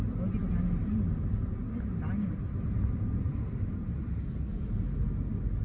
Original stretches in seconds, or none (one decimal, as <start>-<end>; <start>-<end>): 0.0-5.6